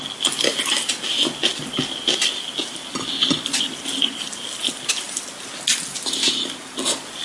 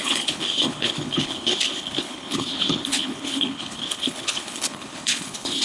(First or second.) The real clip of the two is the first